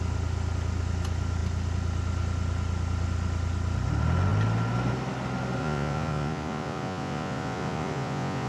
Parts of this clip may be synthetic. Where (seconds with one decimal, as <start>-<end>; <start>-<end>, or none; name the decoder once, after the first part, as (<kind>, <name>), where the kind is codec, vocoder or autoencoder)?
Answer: 5.6-8.5 (vocoder, Vocos)